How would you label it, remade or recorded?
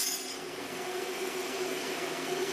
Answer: remade